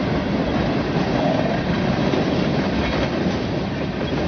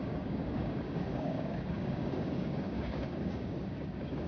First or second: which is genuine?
first